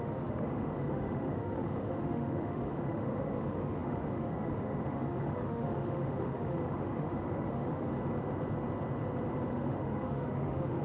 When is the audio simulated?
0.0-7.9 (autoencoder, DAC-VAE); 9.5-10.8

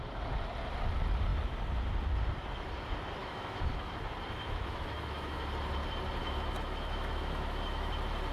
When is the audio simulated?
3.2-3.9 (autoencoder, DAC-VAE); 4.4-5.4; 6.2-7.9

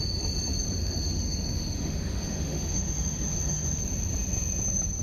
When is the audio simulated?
0.8-3.8 (autoencoder, DAC-VAE)

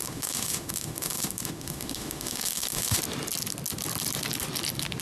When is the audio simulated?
0.0-3.0 (autoencoder, DAC-VAE)

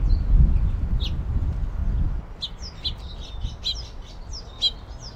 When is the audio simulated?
none

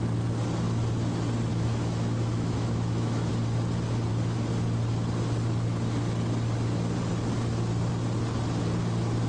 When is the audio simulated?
1.5-3.3 (autoencoder, DAC-VAE)